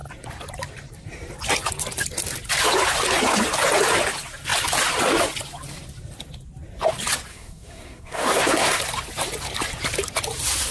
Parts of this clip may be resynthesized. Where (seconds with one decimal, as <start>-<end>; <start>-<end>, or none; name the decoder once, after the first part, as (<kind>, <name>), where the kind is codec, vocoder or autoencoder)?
7.3-8.8 (codec, SNAC)